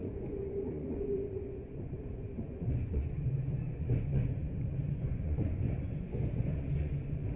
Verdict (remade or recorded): remade